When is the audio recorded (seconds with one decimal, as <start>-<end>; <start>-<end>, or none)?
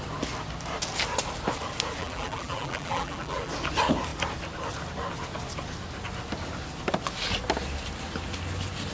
0.0-2.0; 3.5-8.9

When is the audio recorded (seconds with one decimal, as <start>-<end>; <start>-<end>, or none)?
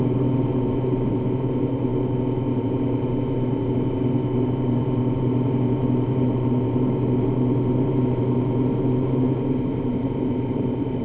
1.9-2.6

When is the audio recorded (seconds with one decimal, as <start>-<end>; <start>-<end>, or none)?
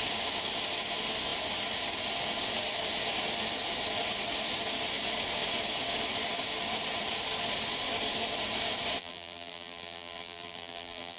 0.0-9.0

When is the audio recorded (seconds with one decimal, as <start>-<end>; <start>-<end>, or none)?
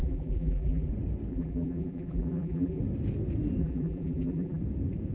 0.9-1.3; 2.8-3.6; 4.6-5.1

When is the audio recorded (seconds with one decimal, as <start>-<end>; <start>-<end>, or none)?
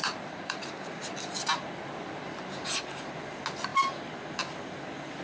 2.7-5.2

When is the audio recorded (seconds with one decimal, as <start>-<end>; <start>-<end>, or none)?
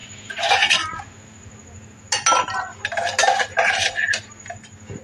1.0-5.0